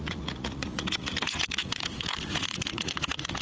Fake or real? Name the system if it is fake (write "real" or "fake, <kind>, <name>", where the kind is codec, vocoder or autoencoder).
fake, vocoder, Vocos